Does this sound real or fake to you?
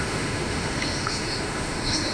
fake